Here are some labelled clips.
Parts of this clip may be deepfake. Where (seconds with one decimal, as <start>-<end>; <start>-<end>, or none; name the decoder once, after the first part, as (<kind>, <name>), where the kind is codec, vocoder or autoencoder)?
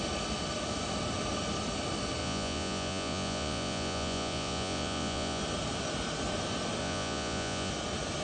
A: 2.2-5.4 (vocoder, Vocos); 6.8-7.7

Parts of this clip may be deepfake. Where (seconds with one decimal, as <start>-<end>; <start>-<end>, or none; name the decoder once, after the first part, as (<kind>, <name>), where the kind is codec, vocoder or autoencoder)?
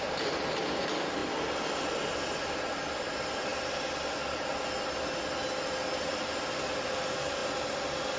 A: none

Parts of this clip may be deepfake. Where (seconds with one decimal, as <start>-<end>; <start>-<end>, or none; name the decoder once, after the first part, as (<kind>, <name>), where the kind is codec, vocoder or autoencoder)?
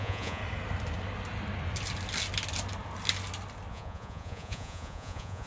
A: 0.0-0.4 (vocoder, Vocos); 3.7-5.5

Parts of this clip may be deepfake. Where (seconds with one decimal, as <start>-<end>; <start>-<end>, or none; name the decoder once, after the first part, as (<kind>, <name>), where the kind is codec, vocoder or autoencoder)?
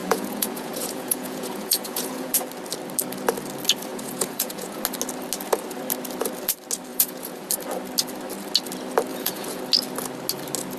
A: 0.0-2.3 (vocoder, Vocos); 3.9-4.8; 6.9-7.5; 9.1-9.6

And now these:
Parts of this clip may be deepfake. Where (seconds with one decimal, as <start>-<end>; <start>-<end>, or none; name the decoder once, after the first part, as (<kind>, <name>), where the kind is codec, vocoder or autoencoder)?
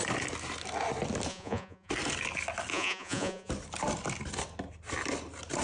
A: 1.3-1.9 (vocoder, Vocos); 2.7-3.5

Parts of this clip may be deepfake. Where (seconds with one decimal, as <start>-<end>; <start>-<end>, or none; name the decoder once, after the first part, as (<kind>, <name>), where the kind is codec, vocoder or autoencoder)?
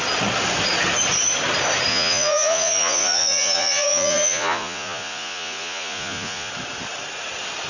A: 1.9-6.5 (vocoder, Vocos)